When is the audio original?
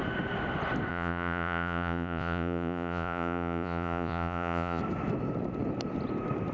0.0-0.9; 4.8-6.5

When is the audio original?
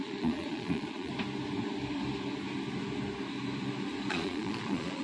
1.1-4.1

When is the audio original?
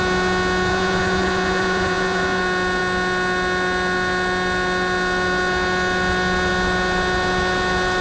0.0-0.7; 2.4-8.0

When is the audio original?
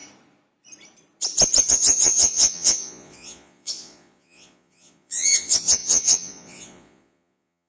0.0-1.7